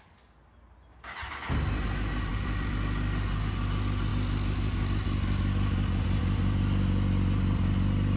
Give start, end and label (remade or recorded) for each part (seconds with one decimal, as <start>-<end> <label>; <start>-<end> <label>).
0.0-0.9 recorded; 0.9-1.5 remade; 1.5-2.3 recorded; 2.3-3.4 remade; 3.4-8.2 recorded

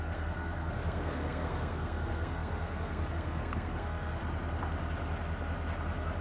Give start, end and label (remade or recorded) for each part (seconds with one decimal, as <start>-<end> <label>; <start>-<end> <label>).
0.0-4.2 remade; 4.2-6.2 recorded

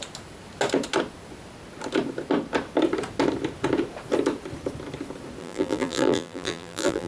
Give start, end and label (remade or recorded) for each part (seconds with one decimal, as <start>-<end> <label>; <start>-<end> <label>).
0.0-5.4 recorded; 5.4-7.1 remade

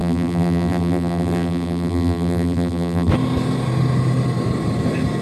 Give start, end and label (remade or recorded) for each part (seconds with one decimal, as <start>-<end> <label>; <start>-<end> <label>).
0.0-3.1 remade; 3.1-5.2 recorded